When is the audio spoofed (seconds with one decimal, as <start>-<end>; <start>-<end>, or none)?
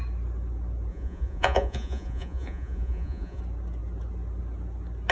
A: 0.9-3.4